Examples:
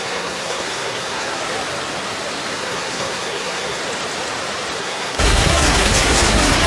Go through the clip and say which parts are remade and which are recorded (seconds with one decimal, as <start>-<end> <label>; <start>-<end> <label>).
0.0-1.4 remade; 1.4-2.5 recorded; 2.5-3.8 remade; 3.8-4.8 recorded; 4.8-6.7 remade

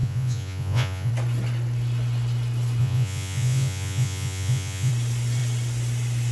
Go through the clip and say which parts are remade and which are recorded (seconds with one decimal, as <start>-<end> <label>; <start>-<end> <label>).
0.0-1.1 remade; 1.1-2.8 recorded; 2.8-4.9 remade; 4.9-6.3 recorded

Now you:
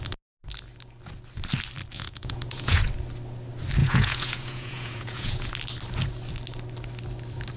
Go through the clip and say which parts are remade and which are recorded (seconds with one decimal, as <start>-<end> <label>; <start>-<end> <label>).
0.0-1.9 recorded; 1.9-2.8 remade; 2.8-3.8 recorded; 3.8-5.5 remade; 5.5-7.6 recorded

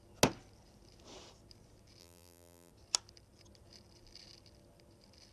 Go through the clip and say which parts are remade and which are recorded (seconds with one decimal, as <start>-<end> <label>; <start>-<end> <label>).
0.0-2.0 recorded; 2.0-2.7 remade; 2.7-5.3 recorded

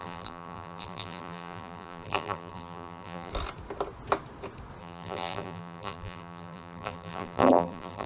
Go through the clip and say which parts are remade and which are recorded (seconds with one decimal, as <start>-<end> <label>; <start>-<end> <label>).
0.0-3.3 remade; 3.3-4.8 recorded; 4.8-8.1 remade